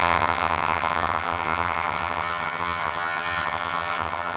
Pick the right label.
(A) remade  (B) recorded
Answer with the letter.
A